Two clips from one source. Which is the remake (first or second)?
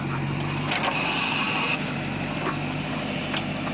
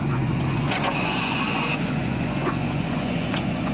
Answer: second